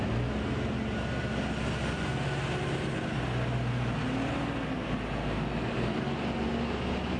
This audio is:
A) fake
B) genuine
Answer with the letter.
B